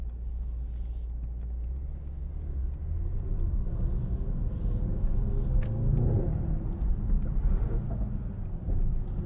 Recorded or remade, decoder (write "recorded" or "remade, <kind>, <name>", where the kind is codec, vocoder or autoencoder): recorded